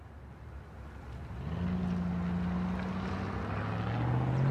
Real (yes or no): yes